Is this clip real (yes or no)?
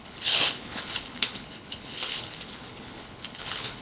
no